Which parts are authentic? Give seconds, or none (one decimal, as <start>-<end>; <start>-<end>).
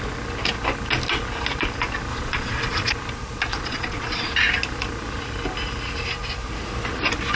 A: 0.0-2.1; 2.9-3.5; 4.3-7.4